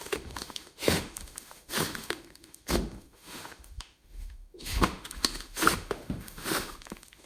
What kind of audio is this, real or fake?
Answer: fake